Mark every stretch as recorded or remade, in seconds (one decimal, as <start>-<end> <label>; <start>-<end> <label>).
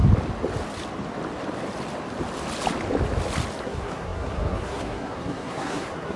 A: 0.0-3.6 recorded; 3.6-6.2 remade